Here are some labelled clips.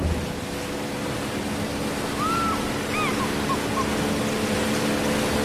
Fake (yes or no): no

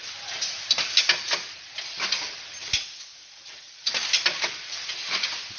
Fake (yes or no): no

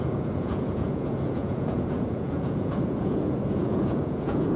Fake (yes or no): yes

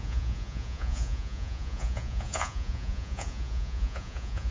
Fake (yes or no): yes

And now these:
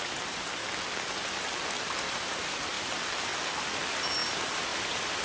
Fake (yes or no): no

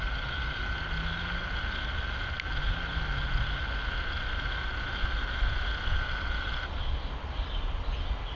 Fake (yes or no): no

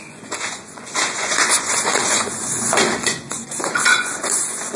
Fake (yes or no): yes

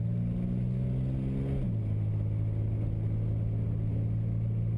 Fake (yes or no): no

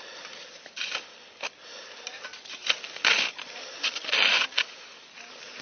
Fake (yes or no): no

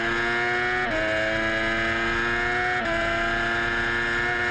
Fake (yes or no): no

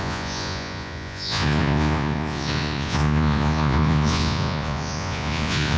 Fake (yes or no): yes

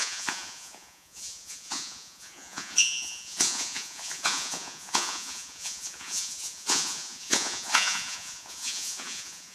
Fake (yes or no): yes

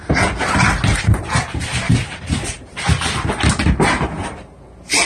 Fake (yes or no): no